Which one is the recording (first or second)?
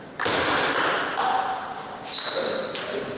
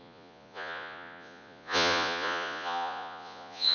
first